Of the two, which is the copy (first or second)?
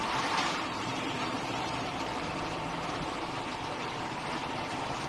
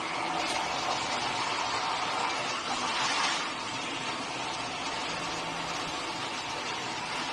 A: first